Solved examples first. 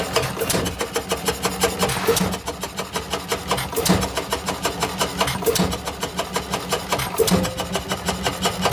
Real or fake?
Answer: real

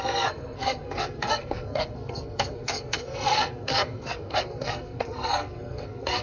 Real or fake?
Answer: fake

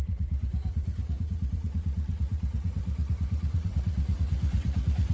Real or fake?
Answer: fake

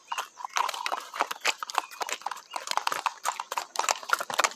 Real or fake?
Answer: real